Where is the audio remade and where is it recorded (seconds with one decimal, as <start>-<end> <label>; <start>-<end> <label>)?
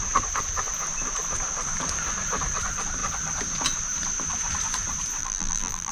0.0-5.2 recorded; 5.2-5.9 remade